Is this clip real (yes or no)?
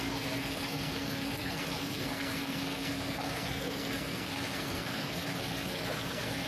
no